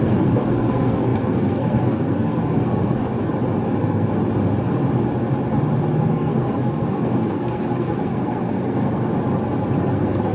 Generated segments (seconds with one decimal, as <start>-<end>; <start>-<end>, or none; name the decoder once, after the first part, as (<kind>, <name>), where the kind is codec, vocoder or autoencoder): 0.0-3.1 (codec, SNAC); 3.8-4.2; 6.1-9.1; 9.8-10.3